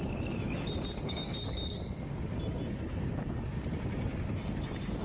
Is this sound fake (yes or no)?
no